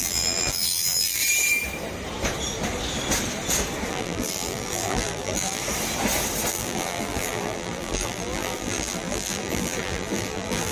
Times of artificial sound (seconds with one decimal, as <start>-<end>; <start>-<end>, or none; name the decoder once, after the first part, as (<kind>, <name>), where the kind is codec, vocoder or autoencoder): 0.0-1.2 (vocoder, BigVGAN v2); 3.9-5.6; 6.5-10.7

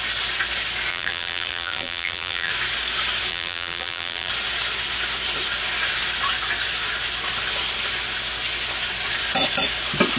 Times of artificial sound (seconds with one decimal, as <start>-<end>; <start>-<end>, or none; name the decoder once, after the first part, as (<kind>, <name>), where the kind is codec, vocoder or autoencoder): 0.9-2.5 (vocoder, BigVGAN v2); 3.3-4.3

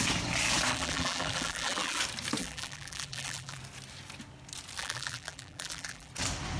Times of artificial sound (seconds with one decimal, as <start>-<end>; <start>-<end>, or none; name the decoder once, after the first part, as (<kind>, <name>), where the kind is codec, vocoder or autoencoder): 0.7-2.0 (vocoder, BigVGAN v2); 2.4-3.6; 4.8-6.1

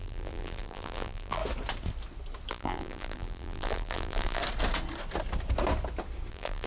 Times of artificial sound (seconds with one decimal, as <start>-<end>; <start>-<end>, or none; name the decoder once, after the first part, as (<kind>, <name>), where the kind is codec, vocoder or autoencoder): 0.0-1.4 (vocoder, BigVGAN v2); 2.5-4.4; 6.3-6.7